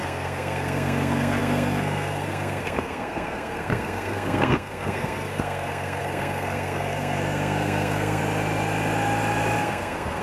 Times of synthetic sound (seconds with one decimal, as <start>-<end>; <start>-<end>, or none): 0.0-8.2; 9.6-10.2